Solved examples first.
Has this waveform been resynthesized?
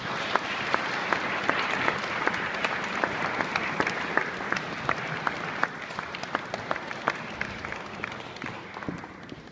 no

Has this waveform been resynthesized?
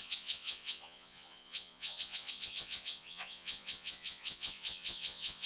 yes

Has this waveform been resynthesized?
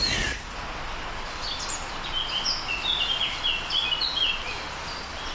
no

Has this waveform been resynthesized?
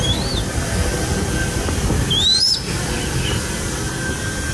no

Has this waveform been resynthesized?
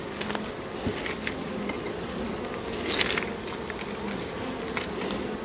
no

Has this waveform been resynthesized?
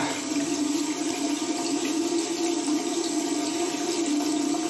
no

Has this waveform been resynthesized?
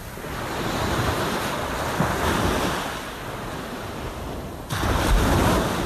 no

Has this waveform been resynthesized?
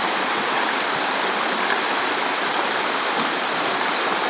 no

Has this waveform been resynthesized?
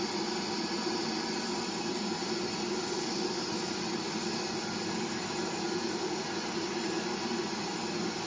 no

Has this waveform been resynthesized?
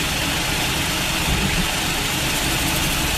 no